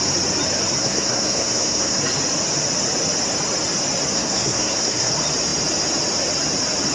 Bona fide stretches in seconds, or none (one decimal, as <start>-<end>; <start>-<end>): 0.0-0.8; 2.0-4.1; 5.1-6.9